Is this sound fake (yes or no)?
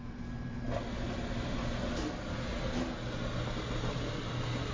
no